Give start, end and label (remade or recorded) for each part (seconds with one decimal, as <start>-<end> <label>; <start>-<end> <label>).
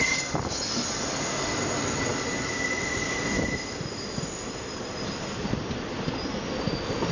0.0-7.1 recorded